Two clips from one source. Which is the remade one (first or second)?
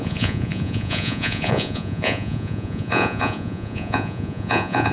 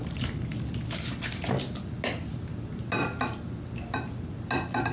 first